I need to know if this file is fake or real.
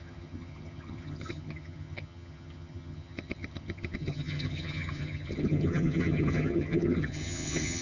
fake